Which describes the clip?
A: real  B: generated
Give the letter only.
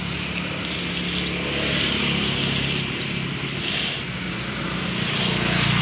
A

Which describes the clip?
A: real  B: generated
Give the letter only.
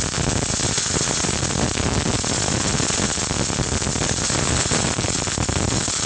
A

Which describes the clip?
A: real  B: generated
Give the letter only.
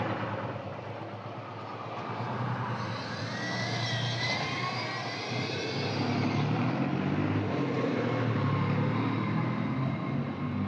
A